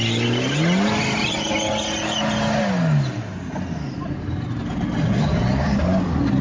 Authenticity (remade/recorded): recorded